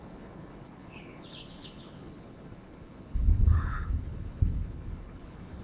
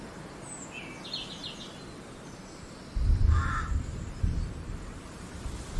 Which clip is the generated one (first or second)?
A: first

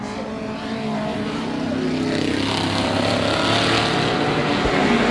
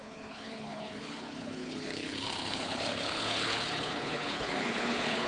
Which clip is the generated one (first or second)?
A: second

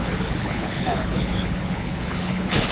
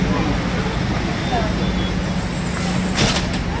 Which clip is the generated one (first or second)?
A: first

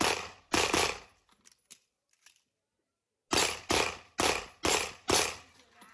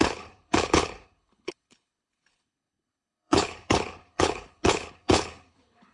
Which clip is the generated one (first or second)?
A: second